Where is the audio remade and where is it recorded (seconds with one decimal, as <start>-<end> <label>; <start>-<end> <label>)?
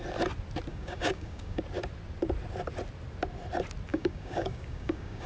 0.0-0.7 recorded; 0.7-1.6 remade; 1.6-3.9 recorded; 3.9-5.3 remade